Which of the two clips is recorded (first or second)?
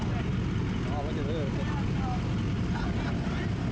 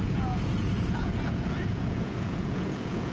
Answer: first